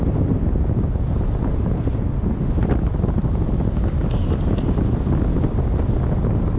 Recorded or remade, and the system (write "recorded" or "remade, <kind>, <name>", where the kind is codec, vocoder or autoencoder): recorded